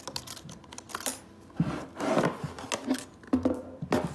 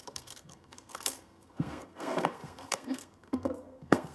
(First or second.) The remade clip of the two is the second